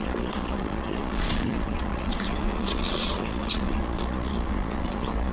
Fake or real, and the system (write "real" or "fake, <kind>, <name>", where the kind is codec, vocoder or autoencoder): fake, vocoder, Vocos